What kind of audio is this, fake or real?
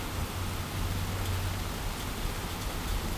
real